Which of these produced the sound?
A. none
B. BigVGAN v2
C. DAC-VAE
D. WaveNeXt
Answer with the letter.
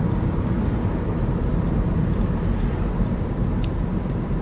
B